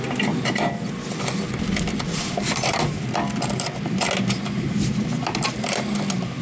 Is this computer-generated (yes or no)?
no